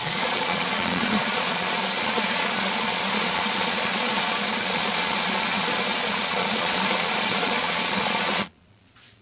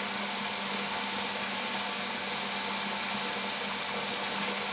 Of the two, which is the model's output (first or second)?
first